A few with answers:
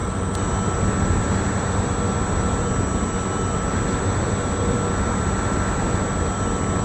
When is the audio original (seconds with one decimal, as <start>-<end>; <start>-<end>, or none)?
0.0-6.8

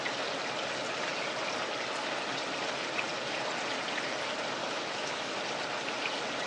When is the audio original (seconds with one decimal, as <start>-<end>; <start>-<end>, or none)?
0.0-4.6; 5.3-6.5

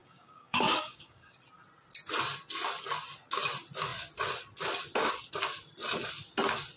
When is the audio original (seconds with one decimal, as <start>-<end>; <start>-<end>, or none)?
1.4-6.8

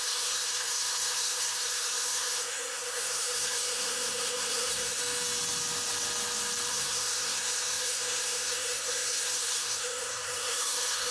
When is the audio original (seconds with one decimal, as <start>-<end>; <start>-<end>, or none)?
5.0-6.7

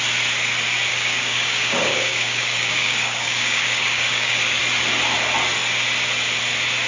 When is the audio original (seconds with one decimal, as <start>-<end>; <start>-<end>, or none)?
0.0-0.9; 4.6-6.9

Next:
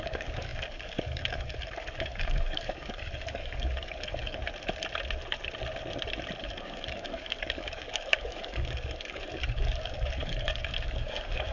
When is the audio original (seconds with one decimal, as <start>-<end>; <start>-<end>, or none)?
4.4-6.4